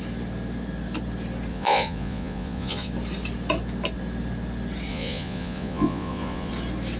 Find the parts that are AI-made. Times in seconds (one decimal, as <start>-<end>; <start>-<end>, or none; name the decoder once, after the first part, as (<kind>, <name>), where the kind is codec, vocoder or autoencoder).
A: 1.5-2.9 (vocoder, Vocos); 4.9-6.5